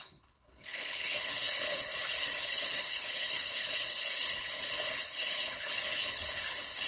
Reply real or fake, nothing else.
fake